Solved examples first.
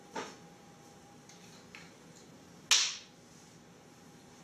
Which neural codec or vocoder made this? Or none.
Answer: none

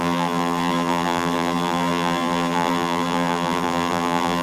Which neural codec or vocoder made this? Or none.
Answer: vocoder, BigVGAN v2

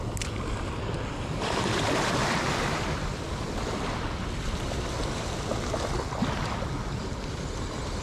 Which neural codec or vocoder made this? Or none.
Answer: none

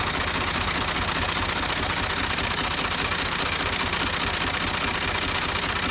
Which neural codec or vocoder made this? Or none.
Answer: vocoder, BigVGAN v2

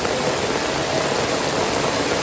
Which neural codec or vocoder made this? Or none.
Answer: none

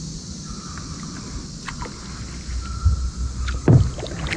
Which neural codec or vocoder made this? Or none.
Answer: none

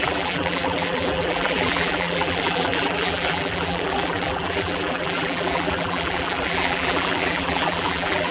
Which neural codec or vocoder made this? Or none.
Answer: vocoder, BigVGAN v2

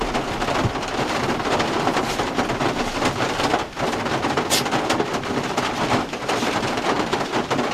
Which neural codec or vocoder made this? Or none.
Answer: vocoder, BigVGAN v2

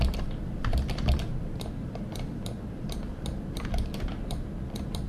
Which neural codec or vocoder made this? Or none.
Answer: vocoder, BigVGAN v2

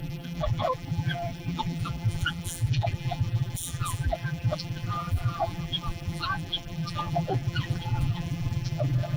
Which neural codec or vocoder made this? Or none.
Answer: vocoder, BigVGAN v2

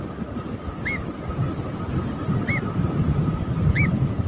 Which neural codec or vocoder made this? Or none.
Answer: none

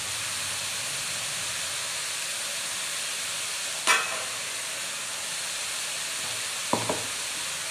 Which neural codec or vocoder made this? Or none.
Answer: none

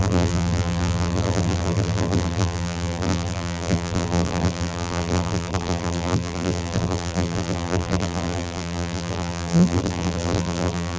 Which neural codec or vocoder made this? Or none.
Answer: vocoder, BigVGAN v2